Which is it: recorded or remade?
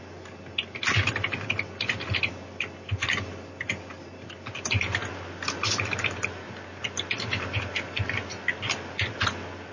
recorded